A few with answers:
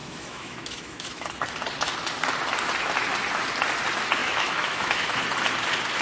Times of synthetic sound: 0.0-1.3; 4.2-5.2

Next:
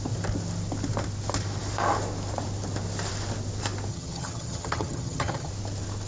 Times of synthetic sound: 3.9-5.5